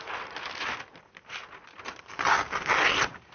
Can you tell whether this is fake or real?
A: real